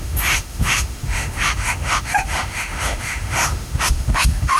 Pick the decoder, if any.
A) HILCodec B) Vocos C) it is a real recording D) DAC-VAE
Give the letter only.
D